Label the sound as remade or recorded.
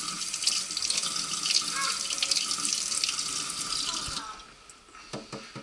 recorded